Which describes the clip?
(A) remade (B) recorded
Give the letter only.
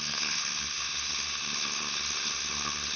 A